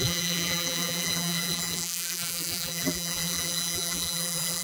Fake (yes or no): yes